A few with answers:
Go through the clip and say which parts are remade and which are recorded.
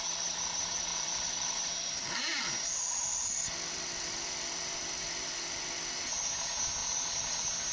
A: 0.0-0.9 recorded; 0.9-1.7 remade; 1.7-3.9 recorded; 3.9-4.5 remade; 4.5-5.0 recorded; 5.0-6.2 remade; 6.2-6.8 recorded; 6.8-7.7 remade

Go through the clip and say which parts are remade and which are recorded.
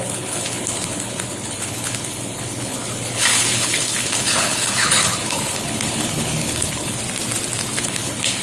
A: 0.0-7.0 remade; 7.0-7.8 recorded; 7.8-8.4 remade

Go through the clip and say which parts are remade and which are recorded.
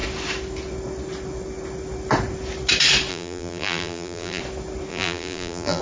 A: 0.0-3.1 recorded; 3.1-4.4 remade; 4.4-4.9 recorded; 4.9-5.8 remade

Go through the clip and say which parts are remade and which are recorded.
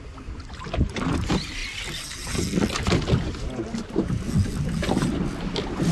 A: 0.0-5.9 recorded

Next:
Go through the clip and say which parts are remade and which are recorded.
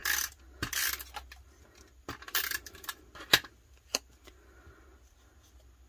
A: 0.0-5.9 recorded